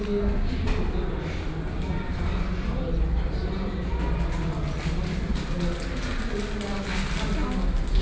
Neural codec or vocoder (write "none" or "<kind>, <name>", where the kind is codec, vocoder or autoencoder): none